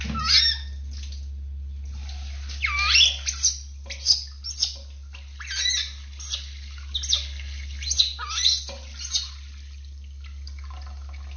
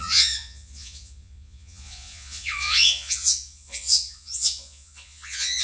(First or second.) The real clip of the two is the first